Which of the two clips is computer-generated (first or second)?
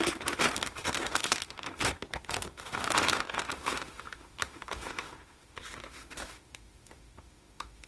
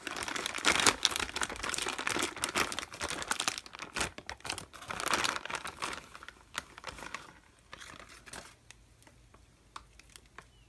first